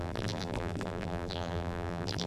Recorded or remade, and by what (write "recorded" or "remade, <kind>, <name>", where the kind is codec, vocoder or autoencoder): remade, vocoder, BigVGAN v2